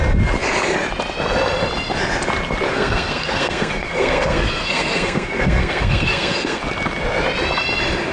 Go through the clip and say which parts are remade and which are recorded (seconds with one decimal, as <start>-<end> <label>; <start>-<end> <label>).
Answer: 0.0-2.7 recorded; 2.7-6.6 remade; 6.6-8.1 recorded